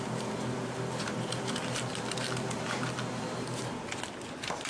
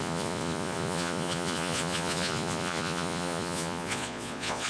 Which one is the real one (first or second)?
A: first